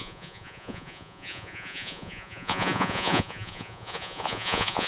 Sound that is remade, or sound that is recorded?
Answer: remade